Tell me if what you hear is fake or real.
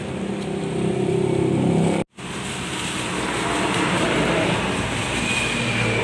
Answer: real